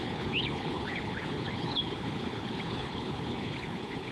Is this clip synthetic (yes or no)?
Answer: yes